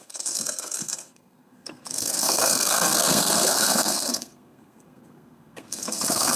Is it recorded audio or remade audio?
remade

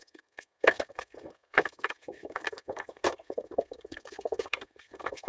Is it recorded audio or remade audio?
remade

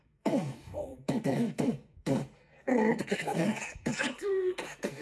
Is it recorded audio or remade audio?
remade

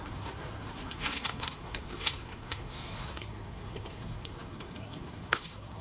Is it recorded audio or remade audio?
remade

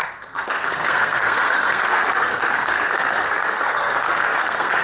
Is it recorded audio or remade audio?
remade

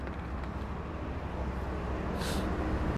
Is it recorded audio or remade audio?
recorded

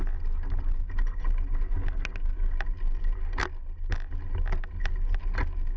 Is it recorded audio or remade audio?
recorded